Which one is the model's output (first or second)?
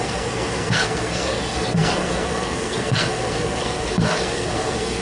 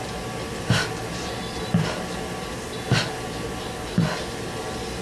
first